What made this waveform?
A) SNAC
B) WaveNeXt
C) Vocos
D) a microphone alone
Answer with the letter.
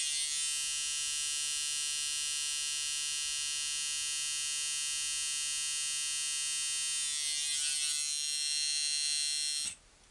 D